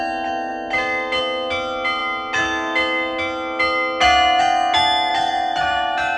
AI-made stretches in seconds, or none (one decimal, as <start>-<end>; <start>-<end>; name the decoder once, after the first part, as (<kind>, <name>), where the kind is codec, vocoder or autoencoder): 5.1-6.2 (vocoder, BigVGAN v2)